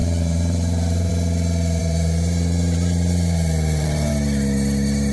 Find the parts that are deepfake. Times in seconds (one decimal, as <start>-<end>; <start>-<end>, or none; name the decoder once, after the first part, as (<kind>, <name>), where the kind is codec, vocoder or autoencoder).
0.0-1.1 (vocoder, BigVGAN v2); 1.8-4.1